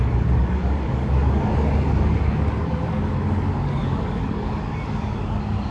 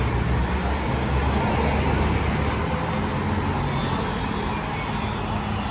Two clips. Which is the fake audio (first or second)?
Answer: first